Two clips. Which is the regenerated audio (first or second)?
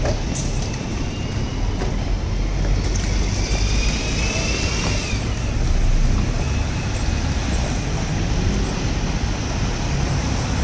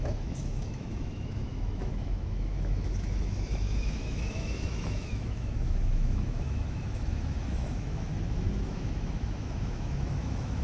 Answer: second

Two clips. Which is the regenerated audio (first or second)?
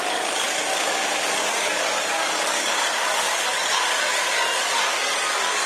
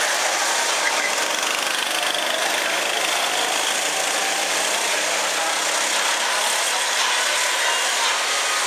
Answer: first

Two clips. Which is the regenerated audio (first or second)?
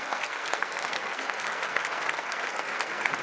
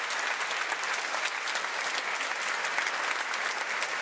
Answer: first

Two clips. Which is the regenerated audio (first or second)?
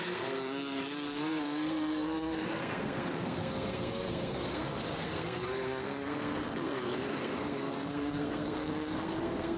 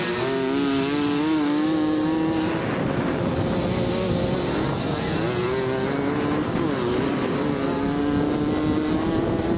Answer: first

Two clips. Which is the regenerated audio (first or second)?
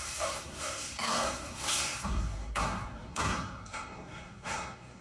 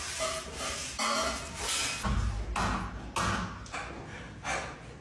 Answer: first